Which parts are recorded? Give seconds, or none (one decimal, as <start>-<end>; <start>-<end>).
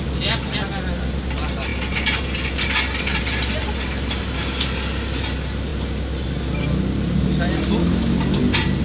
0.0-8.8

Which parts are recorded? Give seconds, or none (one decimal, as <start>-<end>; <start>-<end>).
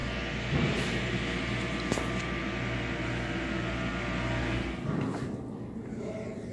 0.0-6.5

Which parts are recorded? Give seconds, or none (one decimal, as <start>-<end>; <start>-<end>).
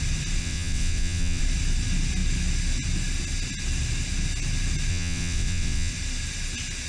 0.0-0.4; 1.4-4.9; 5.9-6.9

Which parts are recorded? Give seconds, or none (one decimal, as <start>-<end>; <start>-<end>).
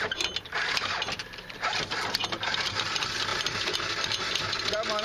0.0-5.0